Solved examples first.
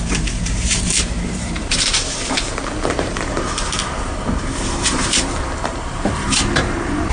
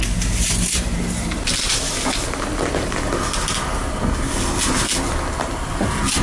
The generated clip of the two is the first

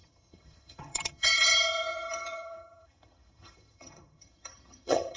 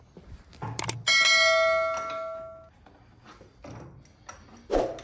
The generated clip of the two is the first